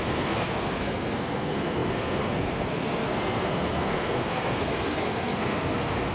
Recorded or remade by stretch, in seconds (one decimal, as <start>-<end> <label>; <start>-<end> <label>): 0.0-6.1 remade